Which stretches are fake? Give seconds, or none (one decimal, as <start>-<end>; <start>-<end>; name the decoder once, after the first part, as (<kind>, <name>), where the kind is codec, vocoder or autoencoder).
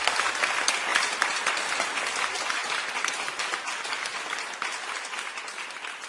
0.9-1.7 (vocoder, BigVGAN v2); 2.6-3.1